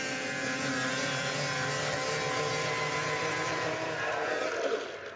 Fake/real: real